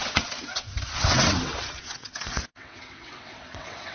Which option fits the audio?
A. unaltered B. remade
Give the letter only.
B